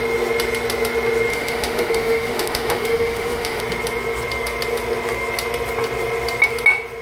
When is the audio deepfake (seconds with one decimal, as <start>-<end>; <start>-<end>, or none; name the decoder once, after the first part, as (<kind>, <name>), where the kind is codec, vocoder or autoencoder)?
1.3-3.6 (autoencoder, DAC-VAE)